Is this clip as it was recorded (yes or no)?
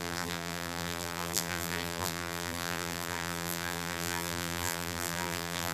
no